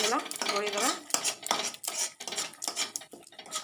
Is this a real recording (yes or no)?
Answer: yes